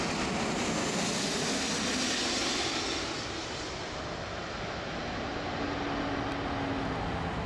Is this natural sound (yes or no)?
yes